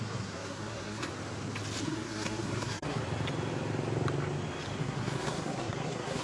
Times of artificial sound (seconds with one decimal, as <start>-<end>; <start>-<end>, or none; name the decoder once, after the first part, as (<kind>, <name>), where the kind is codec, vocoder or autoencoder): 0.0-1.1 (codec, SNAC); 1.8-3.0; 4.8-6.2